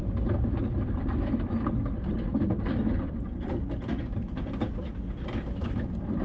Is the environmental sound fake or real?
fake